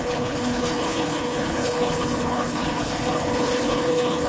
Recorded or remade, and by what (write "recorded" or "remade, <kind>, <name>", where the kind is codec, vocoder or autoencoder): remade, codec, HILCodec